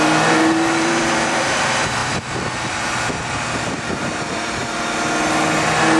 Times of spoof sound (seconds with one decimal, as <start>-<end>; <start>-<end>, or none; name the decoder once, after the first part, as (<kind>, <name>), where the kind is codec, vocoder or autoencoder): 0.0-2.0 (vocoder, BigVGAN v2); 3.7-4.6